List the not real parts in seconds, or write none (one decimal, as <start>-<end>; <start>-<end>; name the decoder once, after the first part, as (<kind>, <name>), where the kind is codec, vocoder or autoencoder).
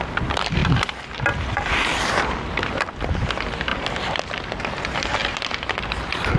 1.9-3.2 (vocoder, BigVGAN v2); 3.7-4.2; 5.2-6.4